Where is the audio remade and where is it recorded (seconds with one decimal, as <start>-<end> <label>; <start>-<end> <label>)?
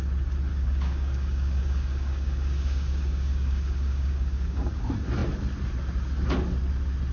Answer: 0.0-0.5 recorded; 0.5-4.8 remade; 4.8-7.1 recorded